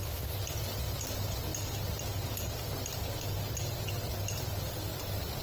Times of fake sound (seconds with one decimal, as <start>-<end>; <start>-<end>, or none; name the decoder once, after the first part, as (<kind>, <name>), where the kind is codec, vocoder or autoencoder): 4.9-5.4 (vocoder, BigVGAN v2)